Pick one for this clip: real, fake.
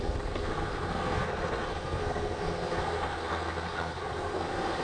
fake